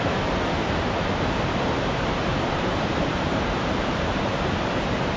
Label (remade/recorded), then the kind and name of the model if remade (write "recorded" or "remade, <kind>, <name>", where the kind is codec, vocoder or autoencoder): remade, vocoder, BigVGAN v2